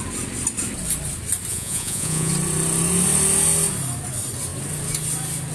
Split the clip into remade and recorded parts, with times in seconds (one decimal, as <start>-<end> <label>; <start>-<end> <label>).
0.0-1.5 recorded; 1.5-2.3 remade; 2.3-5.5 recorded